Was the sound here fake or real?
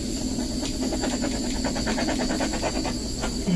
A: real